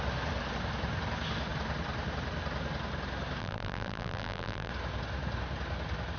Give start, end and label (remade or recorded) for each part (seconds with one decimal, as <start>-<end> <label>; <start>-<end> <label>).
0.0-3.4 recorded; 3.4-4.7 remade; 4.7-6.2 recorded